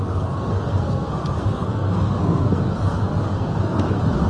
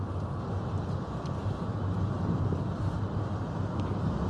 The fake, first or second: first